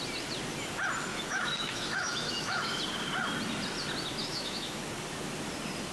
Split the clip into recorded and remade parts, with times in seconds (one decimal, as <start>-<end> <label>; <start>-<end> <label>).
0.0-1.1 recorded; 1.1-2.8 remade; 2.8-4.2 recorded; 4.2-4.8 remade; 4.8-5.9 recorded